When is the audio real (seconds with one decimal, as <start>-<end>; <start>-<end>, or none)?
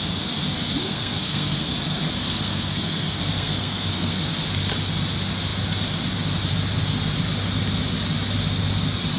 0.0-0.8; 1.7-2.2; 4.3-9.2